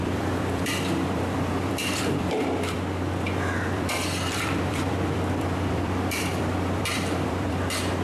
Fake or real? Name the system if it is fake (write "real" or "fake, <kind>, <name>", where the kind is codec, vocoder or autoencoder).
fake, vocoder, BigVGAN v2